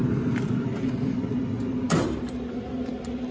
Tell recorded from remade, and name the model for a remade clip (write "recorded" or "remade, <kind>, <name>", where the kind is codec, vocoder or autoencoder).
recorded